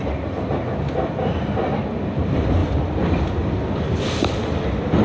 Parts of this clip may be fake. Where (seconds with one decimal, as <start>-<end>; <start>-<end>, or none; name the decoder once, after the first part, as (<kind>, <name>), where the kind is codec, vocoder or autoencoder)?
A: none